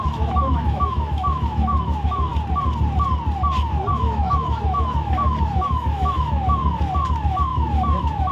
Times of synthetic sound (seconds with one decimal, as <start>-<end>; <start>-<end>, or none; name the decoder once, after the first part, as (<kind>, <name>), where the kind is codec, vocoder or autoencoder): 0.0-2.3 (autoencoder, DAC-VAE); 3.9-6.6; 7.1-8.3